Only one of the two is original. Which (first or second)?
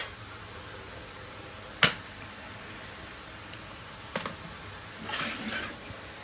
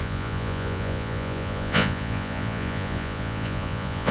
first